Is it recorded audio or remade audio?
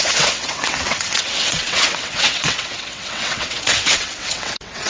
remade